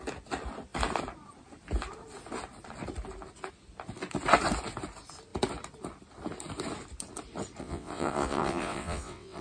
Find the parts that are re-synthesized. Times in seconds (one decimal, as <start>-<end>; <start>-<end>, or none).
7.6-9.4

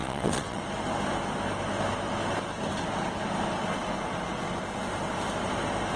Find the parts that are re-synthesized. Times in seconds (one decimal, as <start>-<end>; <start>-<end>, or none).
0.0-0.6

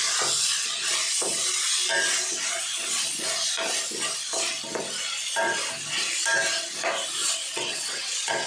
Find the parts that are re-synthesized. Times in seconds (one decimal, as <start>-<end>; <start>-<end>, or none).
7.2-8.5

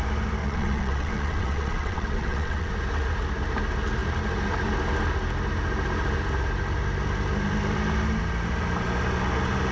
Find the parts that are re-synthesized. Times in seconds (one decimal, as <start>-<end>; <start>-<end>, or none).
0.4-2.7